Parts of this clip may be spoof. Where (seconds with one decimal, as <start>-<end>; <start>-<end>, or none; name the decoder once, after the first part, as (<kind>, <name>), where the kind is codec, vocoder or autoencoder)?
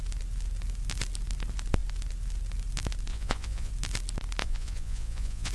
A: 3.1-3.7 (vocoder, Vocos); 4.4-5.5